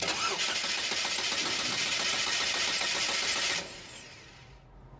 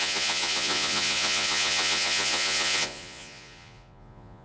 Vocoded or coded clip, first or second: second